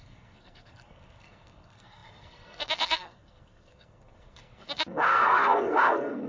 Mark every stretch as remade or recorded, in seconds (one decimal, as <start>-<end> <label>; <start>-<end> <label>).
0.0-6.3 remade

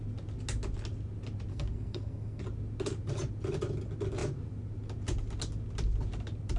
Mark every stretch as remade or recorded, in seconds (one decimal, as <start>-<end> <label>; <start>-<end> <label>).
0.0-1.5 recorded; 1.5-2.4 remade; 2.4-6.6 recorded

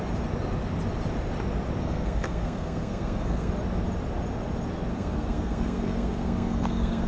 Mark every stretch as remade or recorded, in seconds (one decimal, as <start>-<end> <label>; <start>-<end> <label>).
0.0-1.8 recorded; 1.8-3.5 remade; 3.5-4.9 recorded; 4.9-7.1 remade

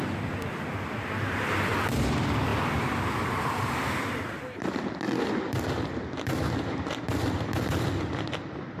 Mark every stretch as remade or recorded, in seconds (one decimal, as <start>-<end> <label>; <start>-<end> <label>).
0.0-8.8 recorded

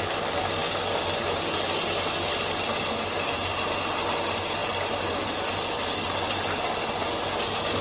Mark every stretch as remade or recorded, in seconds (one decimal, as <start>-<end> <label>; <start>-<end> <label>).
0.0-7.8 recorded

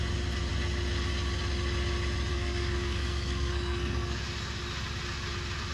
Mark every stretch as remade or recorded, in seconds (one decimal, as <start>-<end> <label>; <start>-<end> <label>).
0.0-2.3 recorded; 2.3-4.2 remade; 4.2-5.7 recorded

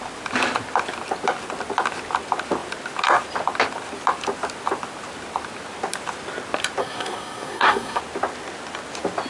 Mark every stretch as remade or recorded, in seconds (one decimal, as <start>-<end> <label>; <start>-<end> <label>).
0.0-6.8 recorded; 6.8-8.0 remade; 8.0-9.3 recorded

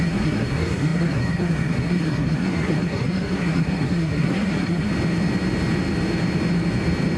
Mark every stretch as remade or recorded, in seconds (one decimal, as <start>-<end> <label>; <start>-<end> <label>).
0.0-4.9 remade; 4.9-7.2 recorded